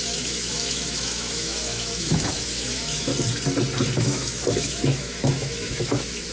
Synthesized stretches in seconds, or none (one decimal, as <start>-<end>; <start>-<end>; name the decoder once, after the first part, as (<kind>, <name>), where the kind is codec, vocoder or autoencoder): 0.0-3.1 (autoencoder, DAC-VAE); 4.0-6.3